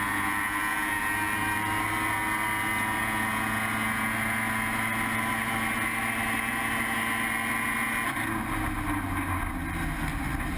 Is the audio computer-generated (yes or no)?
no